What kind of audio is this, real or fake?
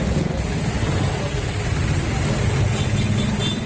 real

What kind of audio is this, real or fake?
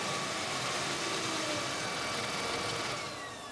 real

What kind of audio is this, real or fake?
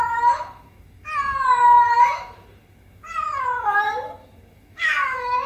fake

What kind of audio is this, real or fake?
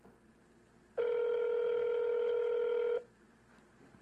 real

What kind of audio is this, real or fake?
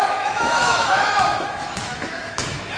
fake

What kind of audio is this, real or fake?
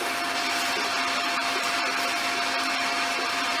real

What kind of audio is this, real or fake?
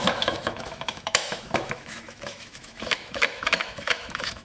fake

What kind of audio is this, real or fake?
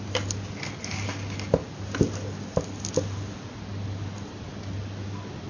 real